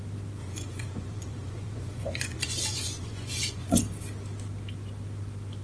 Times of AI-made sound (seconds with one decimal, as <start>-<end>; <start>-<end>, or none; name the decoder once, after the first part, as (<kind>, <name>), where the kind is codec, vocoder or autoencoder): 0.4-3.8 (vocoder, Vocos)